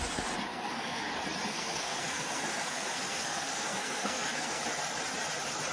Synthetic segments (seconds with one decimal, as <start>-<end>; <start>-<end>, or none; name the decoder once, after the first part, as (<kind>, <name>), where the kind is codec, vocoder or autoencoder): 0.5-1.1 (codec, SNAC); 1.5-4.6